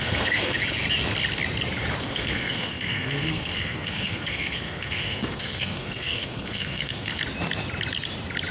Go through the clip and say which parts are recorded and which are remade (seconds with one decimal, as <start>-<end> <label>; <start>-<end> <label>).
0.0-0.6 remade; 0.6-2.0 recorded; 2.0-7.2 remade; 7.2-8.5 recorded